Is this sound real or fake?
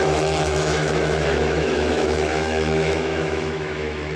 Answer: fake